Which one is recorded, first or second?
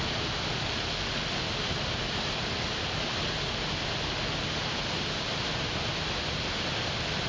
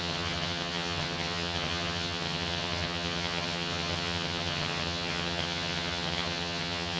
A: first